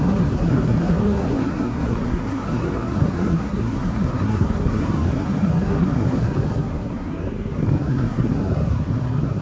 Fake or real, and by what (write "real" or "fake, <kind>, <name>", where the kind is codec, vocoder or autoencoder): fake, codec, SNAC